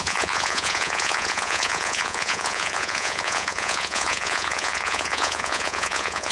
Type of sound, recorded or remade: remade